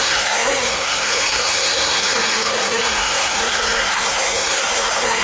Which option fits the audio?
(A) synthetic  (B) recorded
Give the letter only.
A